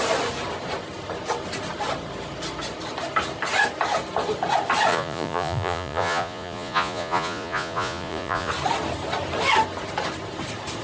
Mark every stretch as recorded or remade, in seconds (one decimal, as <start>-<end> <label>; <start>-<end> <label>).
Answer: 0.0-4.9 recorded; 4.9-8.5 remade; 8.5-10.8 recorded